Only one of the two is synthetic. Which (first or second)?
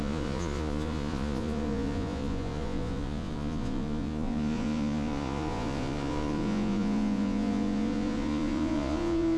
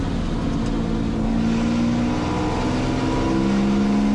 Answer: first